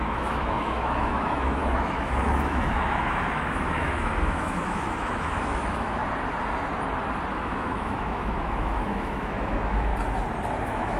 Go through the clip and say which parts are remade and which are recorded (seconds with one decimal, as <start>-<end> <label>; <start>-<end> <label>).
0.0-6.0 remade; 6.0-7.3 recorded; 7.3-9.9 remade; 9.9-10.6 recorded; 10.6-11.0 remade